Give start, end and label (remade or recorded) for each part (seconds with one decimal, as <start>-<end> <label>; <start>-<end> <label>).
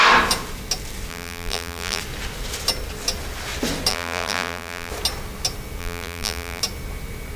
0.0-1.1 recorded; 1.1-2.0 remade; 2.0-3.9 recorded; 3.9-4.9 remade; 4.9-5.8 recorded; 5.8-6.6 remade; 6.6-7.4 recorded